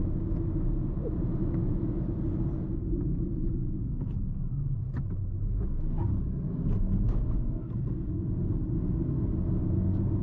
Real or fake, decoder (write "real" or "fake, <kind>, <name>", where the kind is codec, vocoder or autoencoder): real